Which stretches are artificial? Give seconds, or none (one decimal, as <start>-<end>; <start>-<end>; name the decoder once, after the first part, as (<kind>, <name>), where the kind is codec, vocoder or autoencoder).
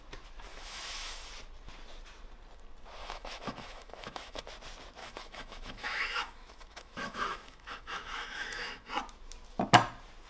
0.5-1.3 (autoencoder, DAC-VAE); 3.0-4.4; 5.0-8.9